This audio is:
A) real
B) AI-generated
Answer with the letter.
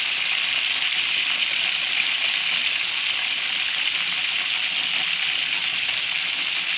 A